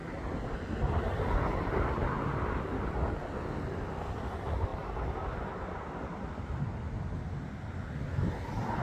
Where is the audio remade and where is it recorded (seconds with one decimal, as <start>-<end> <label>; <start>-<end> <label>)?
0.0-8.8 recorded